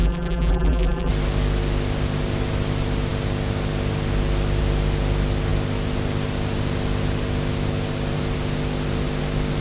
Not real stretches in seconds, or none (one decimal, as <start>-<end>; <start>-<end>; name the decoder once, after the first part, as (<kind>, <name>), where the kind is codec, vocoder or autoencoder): 0.0-1.1 (vocoder, BigVGAN v2)